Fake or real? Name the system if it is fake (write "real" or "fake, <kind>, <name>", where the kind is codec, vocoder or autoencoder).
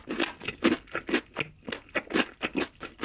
real